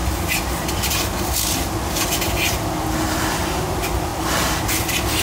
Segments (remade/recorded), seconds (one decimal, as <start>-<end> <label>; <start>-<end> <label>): 0.0-5.2 recorded

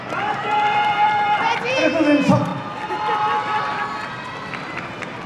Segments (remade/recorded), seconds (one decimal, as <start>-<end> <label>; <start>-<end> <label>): 0.0-2.5 remade; 2.5-5.3 recorded

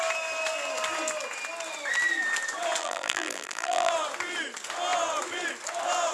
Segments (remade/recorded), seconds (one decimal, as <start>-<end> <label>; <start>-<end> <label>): 0.0-2.8 recorded; 2.8-3.9 remade; 3.9-6.1 recorded

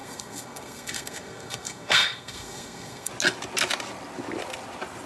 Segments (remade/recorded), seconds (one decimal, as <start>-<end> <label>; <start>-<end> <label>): 0.0-3.1 remade; 3.1-5.1 recorded

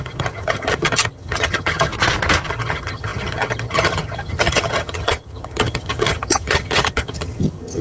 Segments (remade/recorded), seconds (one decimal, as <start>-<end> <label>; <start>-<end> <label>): 0.0-1.9 remade; 1.9-2.5 recorded; 2.5-7.8 remade

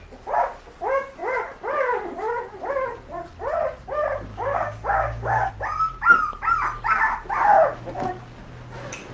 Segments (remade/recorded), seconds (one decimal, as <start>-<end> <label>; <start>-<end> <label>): 0.0-4.3 recorded; 4.3-5.5 remade; 5.5-9.1 recorded